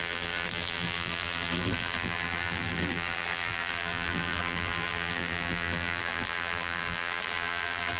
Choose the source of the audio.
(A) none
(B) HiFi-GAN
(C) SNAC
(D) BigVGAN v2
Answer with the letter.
D